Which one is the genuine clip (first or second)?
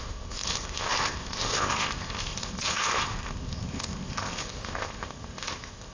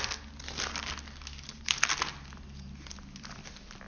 second